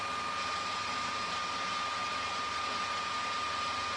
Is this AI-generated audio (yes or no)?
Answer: no